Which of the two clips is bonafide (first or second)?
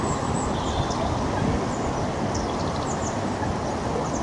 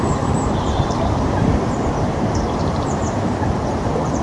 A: first